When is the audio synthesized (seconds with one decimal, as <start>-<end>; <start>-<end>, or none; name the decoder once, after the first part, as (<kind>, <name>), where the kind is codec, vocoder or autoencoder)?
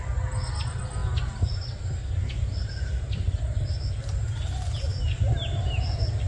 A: none